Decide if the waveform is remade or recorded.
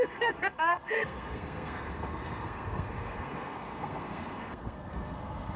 remade